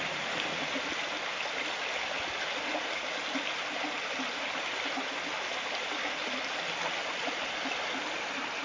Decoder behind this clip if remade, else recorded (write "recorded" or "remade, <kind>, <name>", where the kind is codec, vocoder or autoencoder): recorded